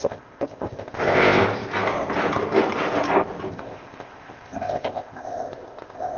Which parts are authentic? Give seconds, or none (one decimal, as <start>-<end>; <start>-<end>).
1.4-3.5

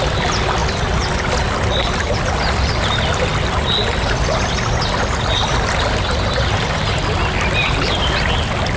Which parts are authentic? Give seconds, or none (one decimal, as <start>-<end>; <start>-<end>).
0.0-8.8

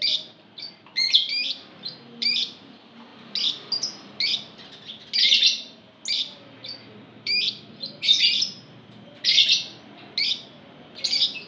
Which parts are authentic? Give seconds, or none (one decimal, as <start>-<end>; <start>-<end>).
0.0-11.5

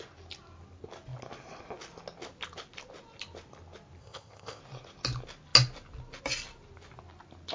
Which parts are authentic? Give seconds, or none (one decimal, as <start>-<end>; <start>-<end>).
0.0-4.0; 4.6-7.5

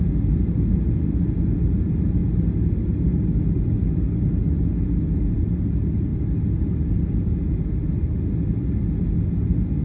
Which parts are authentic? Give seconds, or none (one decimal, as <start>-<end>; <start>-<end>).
0.0-9.8

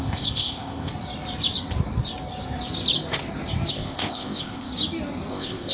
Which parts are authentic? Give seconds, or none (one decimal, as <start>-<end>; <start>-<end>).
0.9-3.7; 4.7-5.3

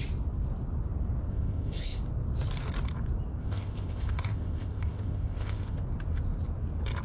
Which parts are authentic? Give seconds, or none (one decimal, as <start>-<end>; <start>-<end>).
0.0-1.3; 2.0-3.4; 5.8-7.0